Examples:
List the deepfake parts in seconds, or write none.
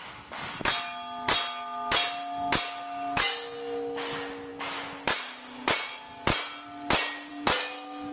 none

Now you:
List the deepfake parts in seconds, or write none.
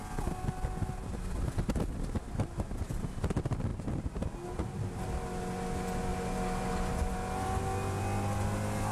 none